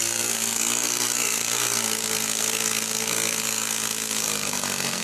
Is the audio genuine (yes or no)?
no